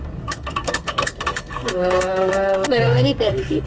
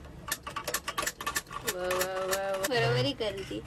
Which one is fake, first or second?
first